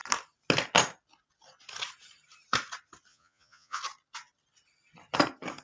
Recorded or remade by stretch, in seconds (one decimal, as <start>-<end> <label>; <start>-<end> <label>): 0.0-3.1 recorded; 3.1-3.8 remade; 3.8-5.6 recorded